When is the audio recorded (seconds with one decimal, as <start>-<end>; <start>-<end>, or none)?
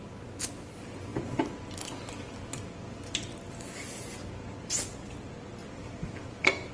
0.0-5.6